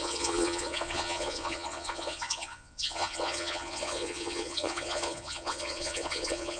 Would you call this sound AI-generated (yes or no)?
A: yes